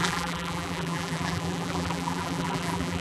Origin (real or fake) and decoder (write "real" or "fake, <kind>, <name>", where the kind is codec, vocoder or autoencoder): fake, vocoder, BigVGAN v2